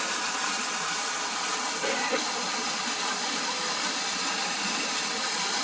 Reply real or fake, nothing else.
real